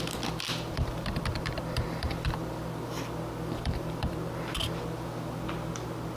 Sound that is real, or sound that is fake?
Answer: fake